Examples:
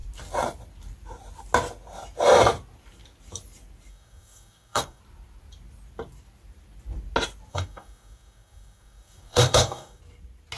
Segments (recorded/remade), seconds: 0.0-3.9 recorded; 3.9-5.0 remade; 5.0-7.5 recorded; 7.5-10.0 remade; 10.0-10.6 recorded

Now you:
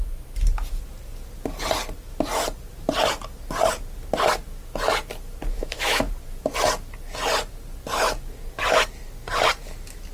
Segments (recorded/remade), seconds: 0.0-5.5 recorded; 5.5-6.1 remade; 6.1-10.1 recorded